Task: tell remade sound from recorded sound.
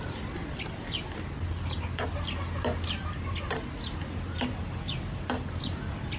recorded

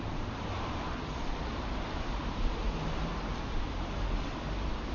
remade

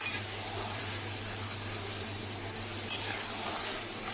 recorded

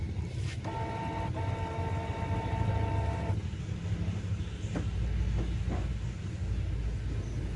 recorded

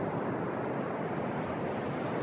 recorded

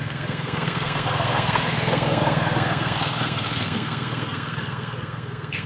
remade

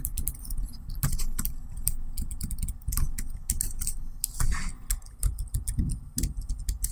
recorded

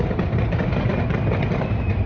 recorded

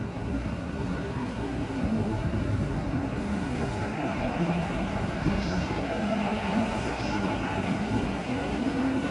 remade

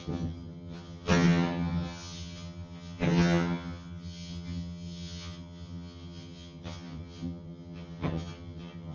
remade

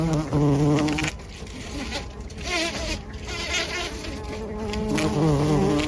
recorded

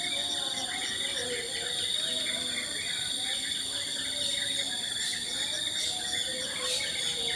recorded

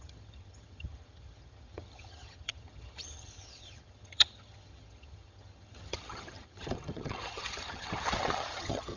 remade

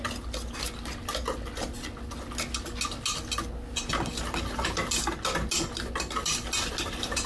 recorded